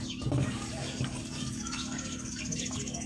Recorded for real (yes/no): no